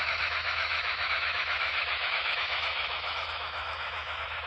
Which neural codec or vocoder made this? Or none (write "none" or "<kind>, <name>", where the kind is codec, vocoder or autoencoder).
autoencoder, DAC-VAE